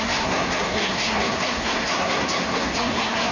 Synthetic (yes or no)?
yes